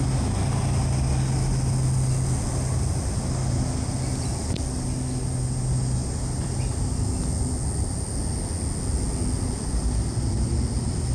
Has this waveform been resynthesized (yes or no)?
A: no